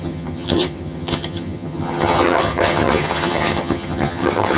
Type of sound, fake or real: fake